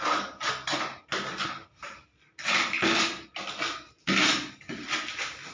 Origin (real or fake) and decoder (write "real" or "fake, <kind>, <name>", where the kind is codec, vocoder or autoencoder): real